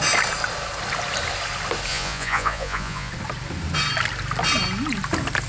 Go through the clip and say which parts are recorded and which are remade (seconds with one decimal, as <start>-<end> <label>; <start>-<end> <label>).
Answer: 0.0-1.9 recorded; 1.9-3.1 remade; 3.1-5.5 recorded